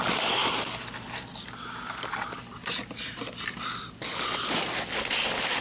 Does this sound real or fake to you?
real